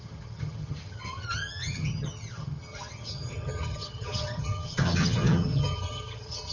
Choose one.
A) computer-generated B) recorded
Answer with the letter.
A